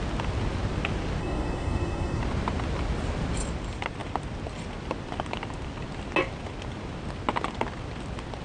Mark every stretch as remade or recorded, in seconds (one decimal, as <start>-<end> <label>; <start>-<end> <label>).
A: 0.0-1.2 recorded; 1.2-2.2 remade; 2.2-8.4 recorded